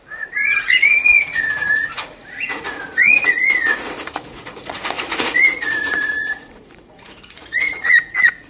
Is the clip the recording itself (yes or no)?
no